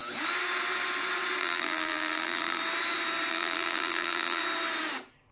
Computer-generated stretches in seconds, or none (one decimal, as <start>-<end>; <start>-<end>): 1.4-2.6; 3.3-4.4